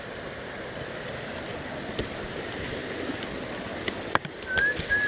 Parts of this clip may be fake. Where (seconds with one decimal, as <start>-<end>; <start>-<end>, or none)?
none